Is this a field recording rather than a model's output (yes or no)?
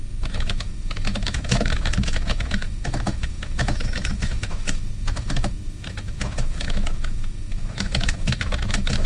no